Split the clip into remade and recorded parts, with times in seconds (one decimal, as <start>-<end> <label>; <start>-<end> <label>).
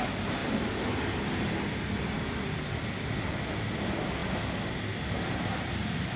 0.0-6.2 recorded